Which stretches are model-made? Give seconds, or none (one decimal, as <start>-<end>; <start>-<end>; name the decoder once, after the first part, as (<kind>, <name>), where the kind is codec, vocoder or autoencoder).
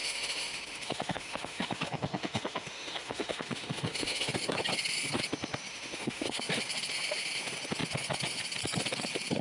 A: 0.0-4.3 (autoencoder, DAC-VAE); 5.7-6.4